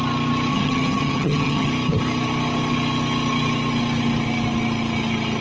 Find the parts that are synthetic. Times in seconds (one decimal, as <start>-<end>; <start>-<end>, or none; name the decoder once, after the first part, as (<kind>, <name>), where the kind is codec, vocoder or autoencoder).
0.5-1.7 (vocoder, HiFi-GAN)